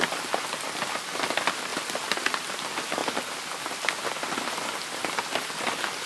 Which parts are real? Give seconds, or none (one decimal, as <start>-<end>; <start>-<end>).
0.0-6.1